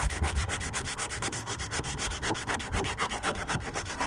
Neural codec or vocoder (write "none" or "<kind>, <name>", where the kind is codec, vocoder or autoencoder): codec, SNAC